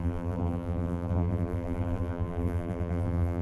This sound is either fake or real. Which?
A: fake